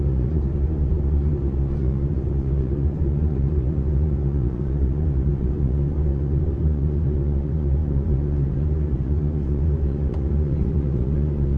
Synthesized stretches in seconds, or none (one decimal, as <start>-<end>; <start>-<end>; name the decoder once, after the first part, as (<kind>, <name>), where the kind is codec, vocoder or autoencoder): 0.0-11.6 (vocoder, Vocos)